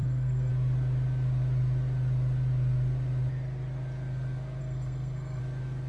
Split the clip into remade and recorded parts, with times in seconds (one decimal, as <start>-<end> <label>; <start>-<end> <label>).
0.0-0.5 remade; 0.5-4.6 recorded; 4.6-5.4 remade; 5.4-5.9 recorded